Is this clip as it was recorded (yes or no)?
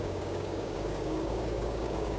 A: no